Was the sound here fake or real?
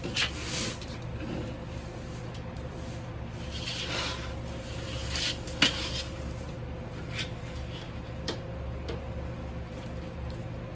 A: real